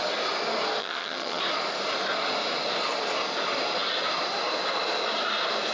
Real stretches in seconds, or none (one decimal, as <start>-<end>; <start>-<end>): 0.0-0.8; 1.4-5.7